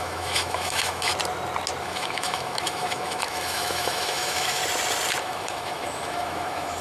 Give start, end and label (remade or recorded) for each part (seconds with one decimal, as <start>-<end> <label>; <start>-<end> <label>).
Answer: 0.0-1.1 remade; 1.1-1.8 recorded; 1.8-4.6 remade; 4.6-5.2 recorded; 5.2-6.8 remade